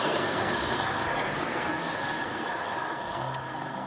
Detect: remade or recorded remade